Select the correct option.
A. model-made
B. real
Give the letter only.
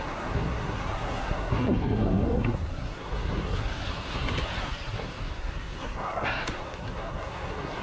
A